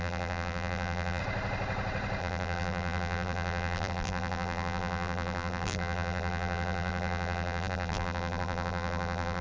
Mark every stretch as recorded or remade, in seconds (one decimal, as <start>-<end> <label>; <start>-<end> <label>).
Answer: 0.0-1.2 remade; 1.2-2.2 recorded; 2.2-9.4 remade